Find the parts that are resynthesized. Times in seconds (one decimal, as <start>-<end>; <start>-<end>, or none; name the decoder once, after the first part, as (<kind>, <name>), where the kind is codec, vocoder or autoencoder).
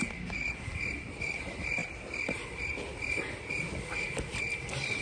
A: 0.0-1.8 (vocoder, BigVGAN v2)